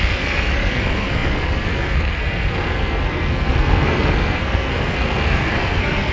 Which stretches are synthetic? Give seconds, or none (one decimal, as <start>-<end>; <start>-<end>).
0.0-6.1